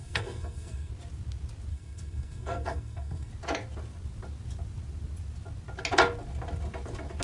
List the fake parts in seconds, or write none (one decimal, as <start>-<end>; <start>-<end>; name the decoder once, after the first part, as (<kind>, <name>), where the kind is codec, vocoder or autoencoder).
0.0-0.9 (codec, SNAC); 1.7-3.3